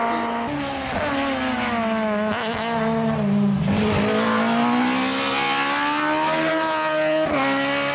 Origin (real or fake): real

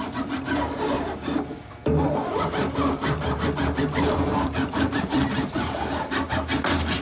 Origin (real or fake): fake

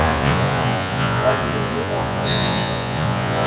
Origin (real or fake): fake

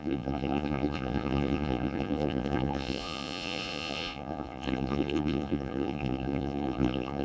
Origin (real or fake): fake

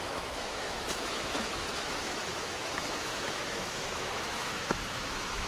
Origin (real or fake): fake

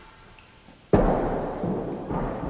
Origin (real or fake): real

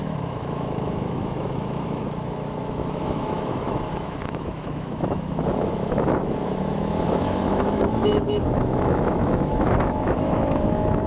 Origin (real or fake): fake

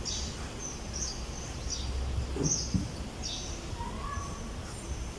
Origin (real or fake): real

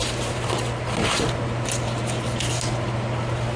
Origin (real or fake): real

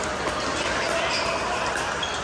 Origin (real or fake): real